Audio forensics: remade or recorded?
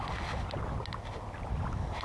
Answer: recorded